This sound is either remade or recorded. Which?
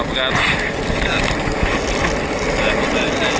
recorded